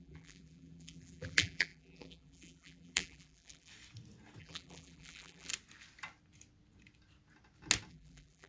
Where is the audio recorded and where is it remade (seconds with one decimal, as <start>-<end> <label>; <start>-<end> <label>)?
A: 0.0-3.7 remade; 3.7-4.4 recorded; 4.4-5.5 remade; 5.5-7.9 recorded; 7.9-8.5 remade